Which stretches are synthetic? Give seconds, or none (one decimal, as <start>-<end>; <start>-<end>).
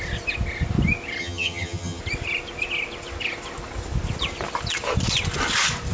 1.2-2.0